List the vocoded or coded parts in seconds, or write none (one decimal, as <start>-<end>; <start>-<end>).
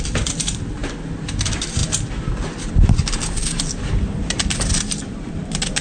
0.0-0.8; 1.3-5.8